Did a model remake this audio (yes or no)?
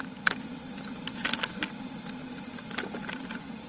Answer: no